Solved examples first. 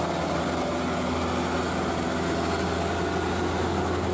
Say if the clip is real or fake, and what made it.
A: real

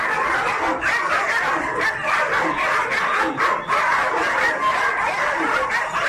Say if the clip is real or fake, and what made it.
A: real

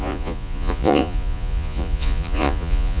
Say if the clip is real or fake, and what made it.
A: fake, vocoder, Vocos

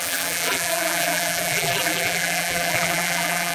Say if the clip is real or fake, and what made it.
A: fake, vocoder, BigVGAN v2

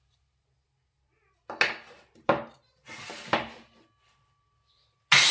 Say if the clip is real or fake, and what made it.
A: real